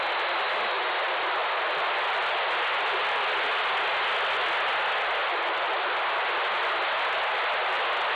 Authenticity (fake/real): real